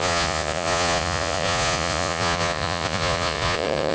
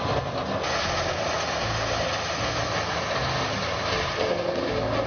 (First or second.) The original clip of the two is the second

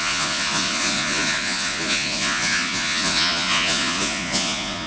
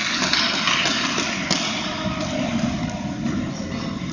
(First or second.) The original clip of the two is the second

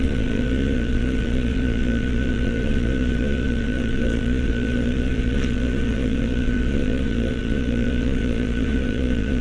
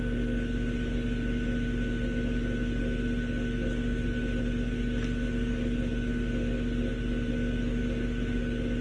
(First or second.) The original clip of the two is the second